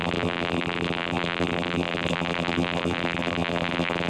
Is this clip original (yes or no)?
no